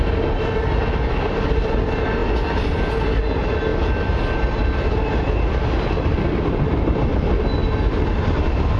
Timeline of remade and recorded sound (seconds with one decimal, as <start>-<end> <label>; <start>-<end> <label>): 0.0-8.8 recorded